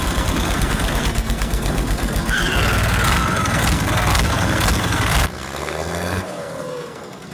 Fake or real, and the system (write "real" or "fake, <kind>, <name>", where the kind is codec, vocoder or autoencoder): fake, codec, SNAC